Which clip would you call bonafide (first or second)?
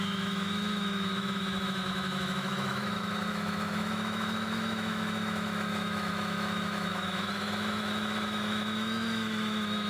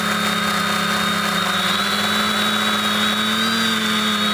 second